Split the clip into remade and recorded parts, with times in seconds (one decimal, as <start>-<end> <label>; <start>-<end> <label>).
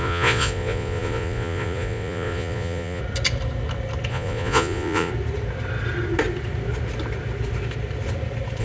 0.0-3.0 remade; 3.0-4.1 recorded; 4.1-5.1 remade; 5.1-8.6 recorded